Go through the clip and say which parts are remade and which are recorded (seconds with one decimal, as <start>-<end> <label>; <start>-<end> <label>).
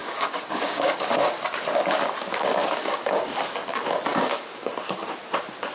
0.0-1.1 remade; 1.1-2.6 recorded; 2.6-3.3 remade; 3.3-4.1 recorded; 4.1-4.7 remade; 4.7-5.7 recorded